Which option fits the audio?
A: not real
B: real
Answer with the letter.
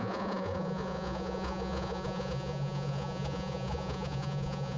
A